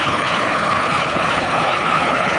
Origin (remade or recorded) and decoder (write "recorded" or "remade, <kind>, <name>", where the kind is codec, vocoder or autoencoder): remade, codec, HILCodec